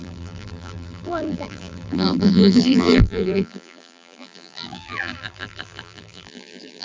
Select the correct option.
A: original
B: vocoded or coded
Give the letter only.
B